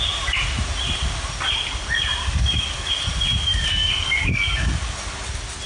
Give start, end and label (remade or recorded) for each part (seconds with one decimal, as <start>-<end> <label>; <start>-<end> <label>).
0.0-2.2 recorded; 2.2-2.9 remade; 2.9-3.7 recorded; 3.7-4.7 remade; 4.7-5.7 recorded